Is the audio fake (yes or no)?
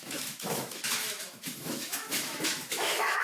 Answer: yes